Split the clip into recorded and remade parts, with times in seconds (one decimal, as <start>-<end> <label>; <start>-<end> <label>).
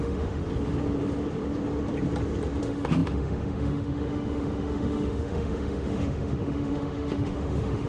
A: 0.0-0.4 remade; 0.4-2.6 recorded; 2.6-7.9 remade